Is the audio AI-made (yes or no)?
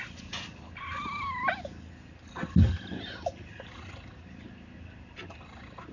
no